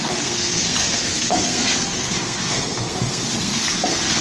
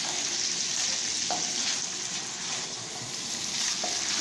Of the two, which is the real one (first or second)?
second